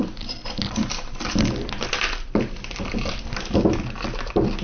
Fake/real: fake